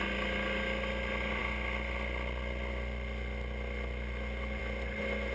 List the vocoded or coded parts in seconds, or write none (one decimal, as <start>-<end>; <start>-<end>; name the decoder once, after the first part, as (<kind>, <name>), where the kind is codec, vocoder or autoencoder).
none